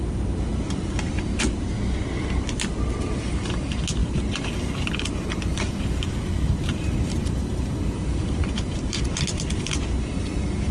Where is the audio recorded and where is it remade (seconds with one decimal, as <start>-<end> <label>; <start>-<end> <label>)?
0.0-4.0 recorded; 4.0-9.0 remade; 9.0-10.7 recorded